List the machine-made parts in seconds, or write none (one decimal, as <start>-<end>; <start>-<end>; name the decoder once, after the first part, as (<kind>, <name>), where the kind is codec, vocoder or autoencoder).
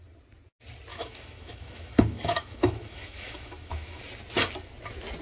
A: 0.9-4.0 (autoencoder, DAC-VAE)